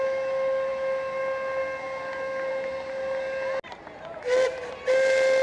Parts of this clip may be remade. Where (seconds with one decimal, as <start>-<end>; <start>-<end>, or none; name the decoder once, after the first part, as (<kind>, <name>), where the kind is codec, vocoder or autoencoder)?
none